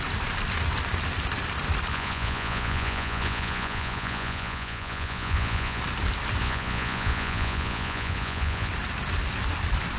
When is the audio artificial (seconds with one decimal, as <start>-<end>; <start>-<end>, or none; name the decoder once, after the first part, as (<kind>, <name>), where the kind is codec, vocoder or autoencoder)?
1.9-5.8 (vocoder, Vocos); 6.4-8.7